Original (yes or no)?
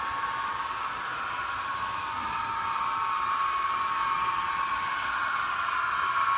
yes